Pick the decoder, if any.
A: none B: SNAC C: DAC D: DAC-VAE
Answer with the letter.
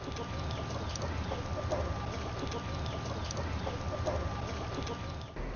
A